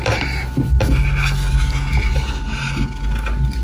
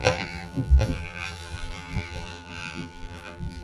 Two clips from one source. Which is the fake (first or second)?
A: second